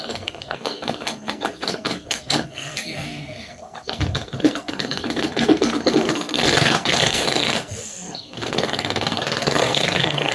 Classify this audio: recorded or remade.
remade